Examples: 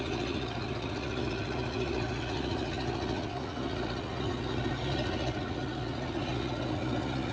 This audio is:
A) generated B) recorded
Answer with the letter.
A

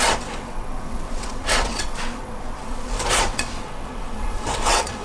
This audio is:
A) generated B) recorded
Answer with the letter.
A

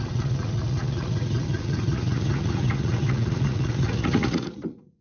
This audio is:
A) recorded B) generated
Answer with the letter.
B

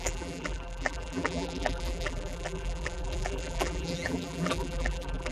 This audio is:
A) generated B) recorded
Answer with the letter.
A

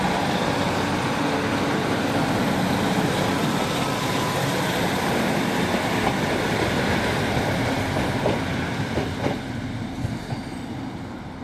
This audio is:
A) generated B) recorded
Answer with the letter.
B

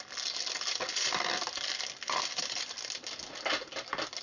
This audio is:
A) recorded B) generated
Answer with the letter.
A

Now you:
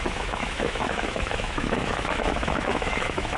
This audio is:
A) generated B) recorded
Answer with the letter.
A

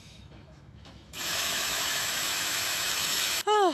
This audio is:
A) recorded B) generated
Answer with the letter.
B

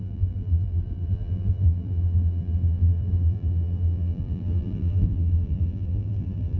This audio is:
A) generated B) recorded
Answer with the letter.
A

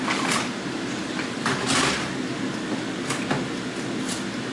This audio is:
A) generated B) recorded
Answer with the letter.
B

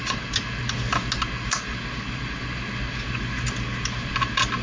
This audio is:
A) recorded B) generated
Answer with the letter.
A